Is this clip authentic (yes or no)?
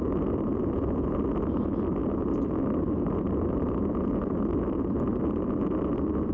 yes